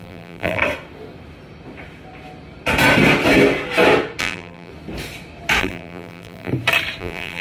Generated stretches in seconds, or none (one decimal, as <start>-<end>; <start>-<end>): 0.0-0.6; 4.2-4.7; 5.6-6.5; 7.0-7.4